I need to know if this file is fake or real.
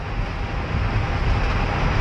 real